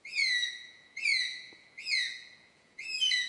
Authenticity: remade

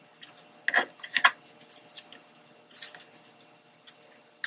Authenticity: recorded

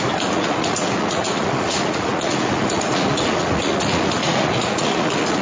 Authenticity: remade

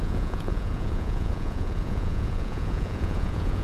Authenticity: remade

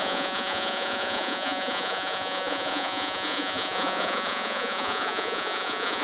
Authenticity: remade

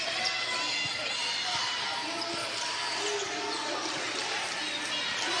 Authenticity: recorded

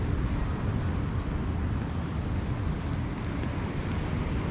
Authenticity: recorded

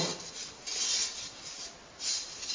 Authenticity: recorded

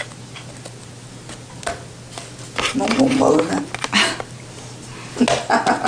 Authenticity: recorded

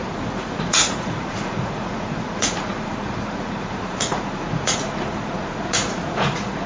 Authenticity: remade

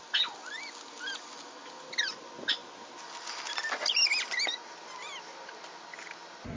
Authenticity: recorded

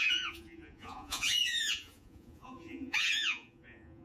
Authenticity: remade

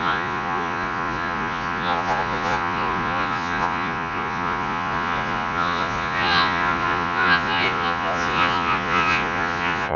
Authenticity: remade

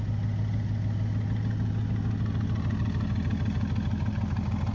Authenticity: recorded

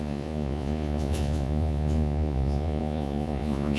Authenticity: remade